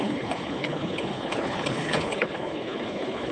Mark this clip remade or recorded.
remade